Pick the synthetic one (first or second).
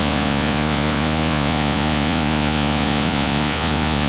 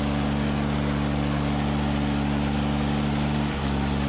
first